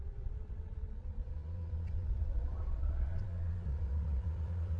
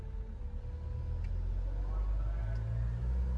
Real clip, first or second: second